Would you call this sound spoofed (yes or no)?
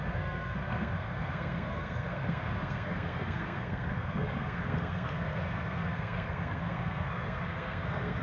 yes